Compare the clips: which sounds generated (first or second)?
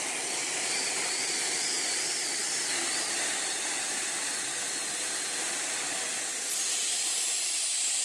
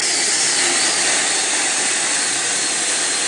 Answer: first